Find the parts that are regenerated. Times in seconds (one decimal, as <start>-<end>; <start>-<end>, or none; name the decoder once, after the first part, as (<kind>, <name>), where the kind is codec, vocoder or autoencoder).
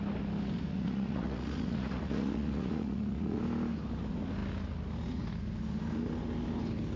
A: 0.7-3.4 (vocoder, Vocos)